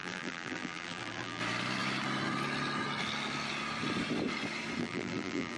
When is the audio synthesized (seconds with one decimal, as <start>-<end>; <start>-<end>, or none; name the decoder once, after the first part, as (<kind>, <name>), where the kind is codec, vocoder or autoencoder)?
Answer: 0.0-1.4 (vocoder, BigVGAN v2); 4.8-5.6